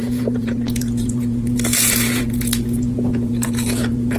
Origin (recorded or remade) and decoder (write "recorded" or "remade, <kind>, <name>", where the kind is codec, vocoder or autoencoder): remade, vocoder, Vocos